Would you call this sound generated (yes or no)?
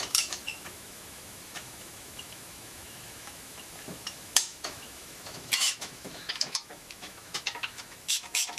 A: yes